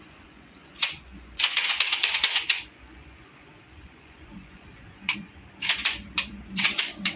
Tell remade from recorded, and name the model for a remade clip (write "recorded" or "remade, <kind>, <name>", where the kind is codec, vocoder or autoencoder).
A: remade, vocoder, Vocos